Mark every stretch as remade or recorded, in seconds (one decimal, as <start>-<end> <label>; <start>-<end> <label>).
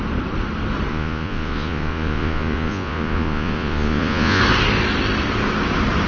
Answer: 0.0-0.9 recorded; 0.9-4.4 remade; 4.4-6.1 recorded